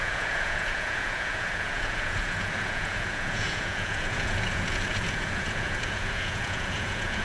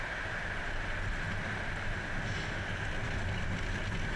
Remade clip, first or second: first